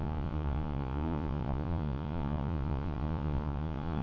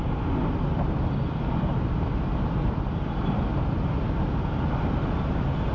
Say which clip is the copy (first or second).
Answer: first